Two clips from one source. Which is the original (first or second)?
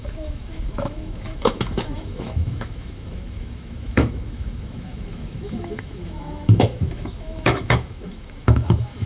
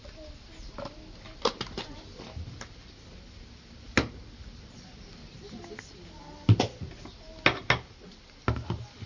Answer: second